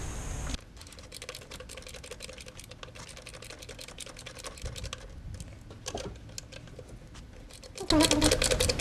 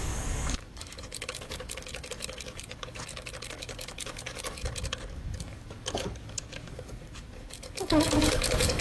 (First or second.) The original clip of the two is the first